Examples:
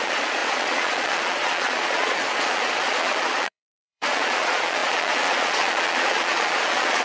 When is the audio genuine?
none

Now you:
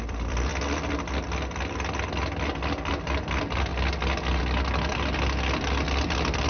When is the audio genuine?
0.5-2.9; 3.7-4.4

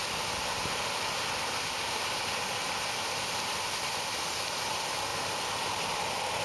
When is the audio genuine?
0.0-6.4

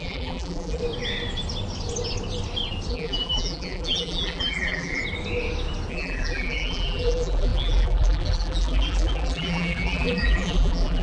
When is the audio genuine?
0.8-2.9; 5.0-5.9

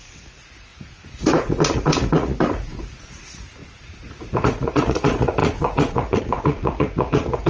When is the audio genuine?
none

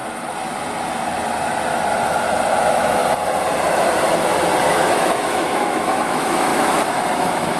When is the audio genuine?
0.0-2.6; 3.0-4.7

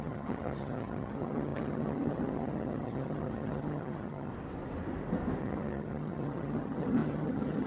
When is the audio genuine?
4.3-5.4